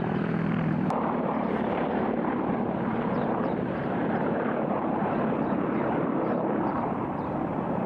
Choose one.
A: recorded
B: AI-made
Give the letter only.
B